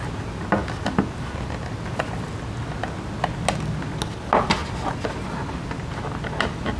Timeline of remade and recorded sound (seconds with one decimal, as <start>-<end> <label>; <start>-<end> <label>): 0.0-6.8 recorded